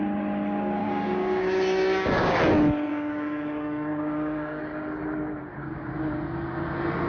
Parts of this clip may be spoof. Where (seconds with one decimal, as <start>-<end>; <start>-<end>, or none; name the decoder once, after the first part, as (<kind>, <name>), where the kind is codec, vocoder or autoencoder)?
0.8-2.4 (codec, DAC); 2.9-4.6